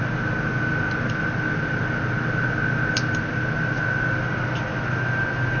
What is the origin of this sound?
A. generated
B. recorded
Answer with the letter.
B